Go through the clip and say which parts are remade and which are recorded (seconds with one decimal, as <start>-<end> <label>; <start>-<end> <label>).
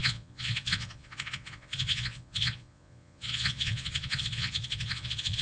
0.0-5.4 remade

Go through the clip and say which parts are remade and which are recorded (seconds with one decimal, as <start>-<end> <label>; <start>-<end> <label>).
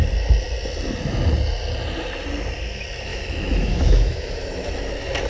0.0-3.1 recorded; 3.1-4.7 remade; 4.7-5.3 recorded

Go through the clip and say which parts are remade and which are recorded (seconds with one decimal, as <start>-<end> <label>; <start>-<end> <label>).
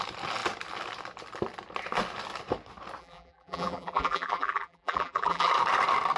0.0-3.0 recorded; 3.0-5.5 remade; 5.5-6.2 recorded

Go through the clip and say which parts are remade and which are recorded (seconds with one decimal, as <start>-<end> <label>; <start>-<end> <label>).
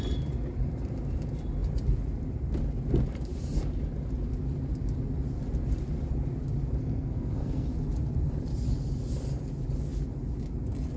0.0-6.8 recorded; 6.8-7.7 remade; 7.7-11.0 recorded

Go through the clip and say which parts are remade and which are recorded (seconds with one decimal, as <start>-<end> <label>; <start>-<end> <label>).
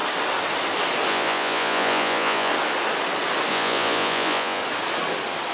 0.0-1.1 recorded; 1.1-2.5 remade; 2.5-3.5 recorded; 3.5-4.6 remade; 4.6-5.5 recorded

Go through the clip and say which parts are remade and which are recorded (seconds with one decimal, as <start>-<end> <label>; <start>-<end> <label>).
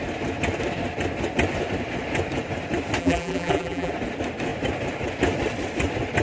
0.0-3.0 recorded; 3.0-3.9 remade; 3.9-6.2 recorded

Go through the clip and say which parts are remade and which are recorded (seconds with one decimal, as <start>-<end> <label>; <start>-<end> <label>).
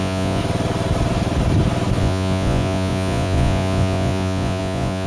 0.0-0.4 remade; 0.4-2.0 recorded; 2.0-5.1 remade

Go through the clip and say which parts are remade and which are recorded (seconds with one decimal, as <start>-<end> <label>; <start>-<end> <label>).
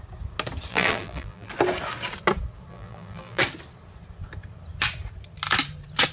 0.0-0.7 recorded; 0.7-1.5 remade; 1.5-2.7 recorded; 2.7-3.4 remade; 3.4-6.1 recorded